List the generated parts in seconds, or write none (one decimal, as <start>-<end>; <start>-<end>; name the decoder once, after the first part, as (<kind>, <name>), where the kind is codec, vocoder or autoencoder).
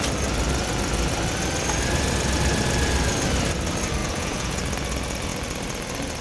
4.0-4.6 (vocoder, Vocos)